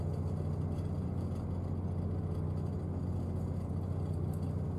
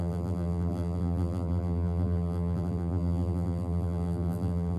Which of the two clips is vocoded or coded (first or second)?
second